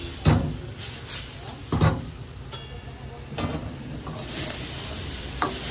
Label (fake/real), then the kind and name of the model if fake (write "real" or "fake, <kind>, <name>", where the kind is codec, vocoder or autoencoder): real